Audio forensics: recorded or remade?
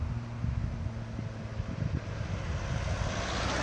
recorded